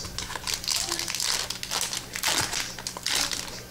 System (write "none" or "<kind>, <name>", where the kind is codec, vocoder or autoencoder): none